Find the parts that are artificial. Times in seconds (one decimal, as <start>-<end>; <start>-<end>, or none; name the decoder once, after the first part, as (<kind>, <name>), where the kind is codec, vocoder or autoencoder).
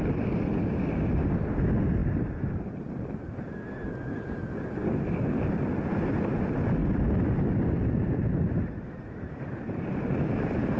0.0-10.8 (vocoder, BigVGAN v2)